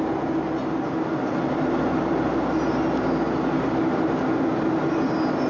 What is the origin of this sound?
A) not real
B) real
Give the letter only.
B